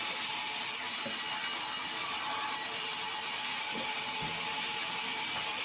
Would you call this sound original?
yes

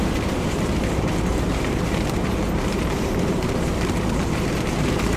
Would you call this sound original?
no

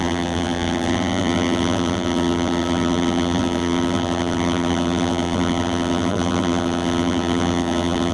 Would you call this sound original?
no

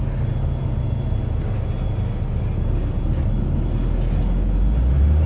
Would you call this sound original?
yes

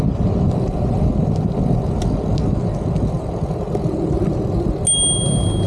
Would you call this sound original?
yes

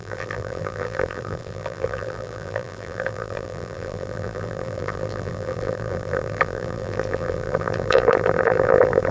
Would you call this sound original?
no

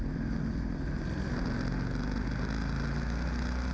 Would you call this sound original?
yes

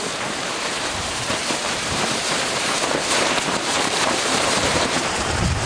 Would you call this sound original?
no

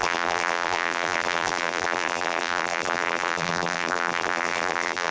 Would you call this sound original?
no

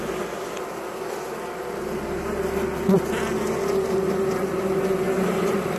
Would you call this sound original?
yes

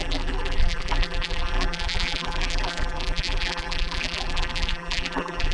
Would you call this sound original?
no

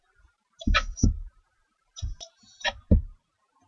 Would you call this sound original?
yes